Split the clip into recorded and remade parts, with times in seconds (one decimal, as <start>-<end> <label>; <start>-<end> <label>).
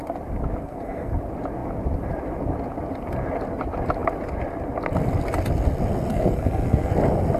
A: 0.0-0.6 recorded; 0.6-1.1 remade; 1.1-6.1 recorded; 6.1-6.9 remade; 6.9-7.4 recorded